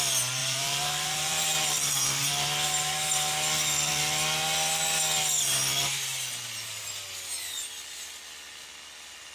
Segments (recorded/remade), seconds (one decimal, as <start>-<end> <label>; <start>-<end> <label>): 0.0-0.4 recorded; 0.4-2.3 remade; 2.3-9.3 recorded